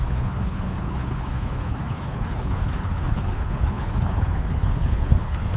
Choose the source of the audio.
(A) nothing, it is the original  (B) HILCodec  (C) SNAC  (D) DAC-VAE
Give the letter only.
B